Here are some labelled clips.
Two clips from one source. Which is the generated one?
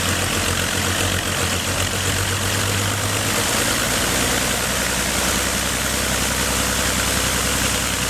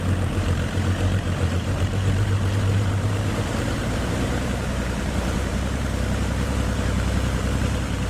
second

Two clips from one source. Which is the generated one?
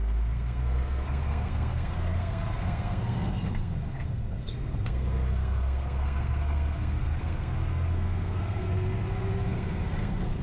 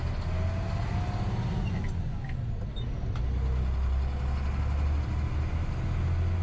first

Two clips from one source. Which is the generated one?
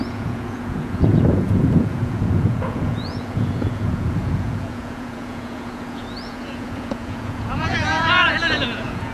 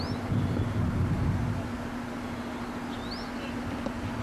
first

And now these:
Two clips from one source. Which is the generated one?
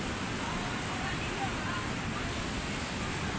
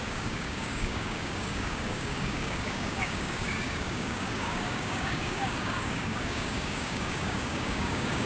second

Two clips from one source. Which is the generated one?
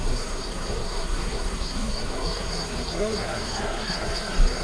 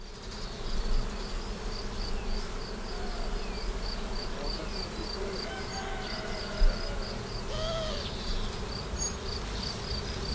first